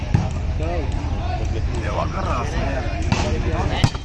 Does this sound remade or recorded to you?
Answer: recorded